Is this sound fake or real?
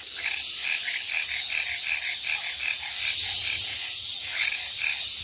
real